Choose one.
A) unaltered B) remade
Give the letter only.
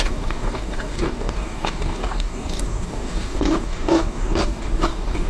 B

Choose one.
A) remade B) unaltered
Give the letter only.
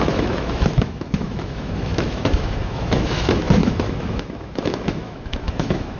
A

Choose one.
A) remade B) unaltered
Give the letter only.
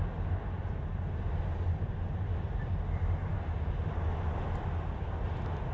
B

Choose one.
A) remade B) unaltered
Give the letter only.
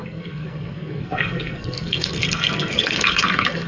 A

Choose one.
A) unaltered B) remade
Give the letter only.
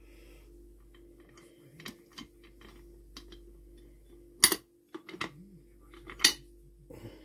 A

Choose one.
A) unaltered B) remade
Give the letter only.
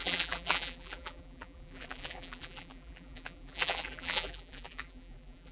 B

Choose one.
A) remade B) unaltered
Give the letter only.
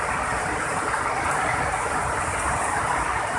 B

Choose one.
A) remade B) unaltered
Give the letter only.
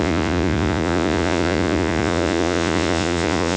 A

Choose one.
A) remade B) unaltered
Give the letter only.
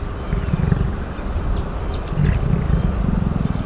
B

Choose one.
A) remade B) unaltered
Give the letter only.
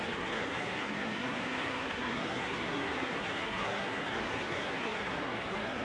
A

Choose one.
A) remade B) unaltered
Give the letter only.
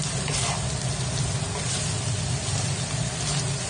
B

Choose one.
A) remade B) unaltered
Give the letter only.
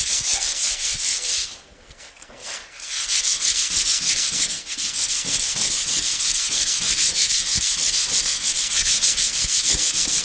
A